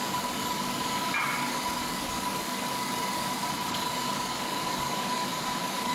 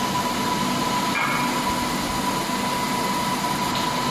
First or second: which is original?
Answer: second